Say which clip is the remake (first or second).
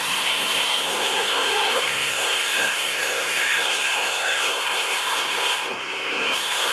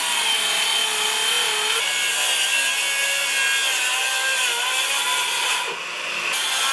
first